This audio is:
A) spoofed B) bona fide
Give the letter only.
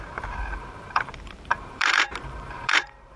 A